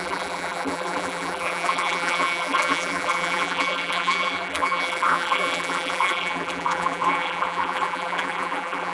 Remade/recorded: remade